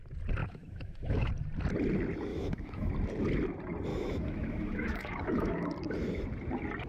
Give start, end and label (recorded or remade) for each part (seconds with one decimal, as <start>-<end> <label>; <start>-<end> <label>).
0.0-0.4 recorded; 0.4-1.3 remade; 1.3-2.3 recorded; 2.3-2.9 remade; 2.9-3.9 recorded; 3.9-5.7 remade; 5.7-6.9 recorded